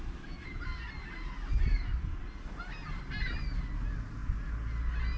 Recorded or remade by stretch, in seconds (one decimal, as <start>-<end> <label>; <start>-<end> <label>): 0.0-5.2 recorded